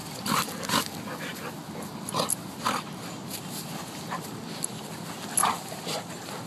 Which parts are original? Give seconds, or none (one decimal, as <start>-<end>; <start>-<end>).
0.8-5.4; 6.1-6.5